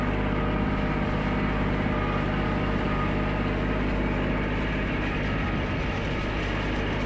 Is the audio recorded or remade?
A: recorded